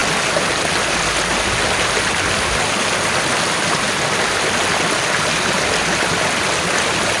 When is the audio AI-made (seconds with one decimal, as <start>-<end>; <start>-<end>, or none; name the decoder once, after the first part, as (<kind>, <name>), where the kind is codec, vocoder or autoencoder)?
none